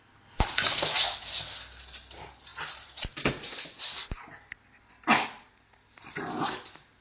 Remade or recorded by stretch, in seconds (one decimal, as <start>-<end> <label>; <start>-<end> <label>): 0.0-7.0 recorded